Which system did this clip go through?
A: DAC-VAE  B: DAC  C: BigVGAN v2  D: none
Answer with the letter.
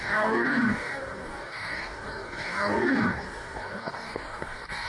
B